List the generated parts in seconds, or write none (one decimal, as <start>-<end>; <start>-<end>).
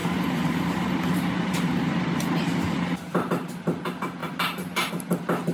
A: 0.0-3.3; 4.2-4.9